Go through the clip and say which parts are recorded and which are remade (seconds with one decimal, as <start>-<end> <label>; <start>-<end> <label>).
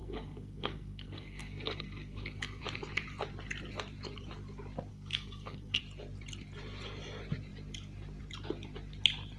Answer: 0.0-2.6 remade; 2.6-4.9 recorded; 4.9-5.8 remade; 5.8-9.4 recorded